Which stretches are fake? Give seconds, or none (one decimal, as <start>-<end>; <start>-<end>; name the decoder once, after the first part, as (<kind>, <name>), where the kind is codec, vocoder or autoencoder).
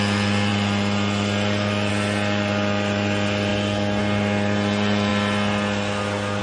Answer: none